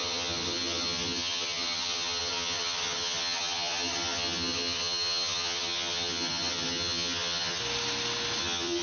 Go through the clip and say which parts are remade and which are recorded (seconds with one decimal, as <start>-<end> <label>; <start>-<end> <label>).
0.0-7.6 remade; 7.6-8.4 recorded; 8.4-8.8 remade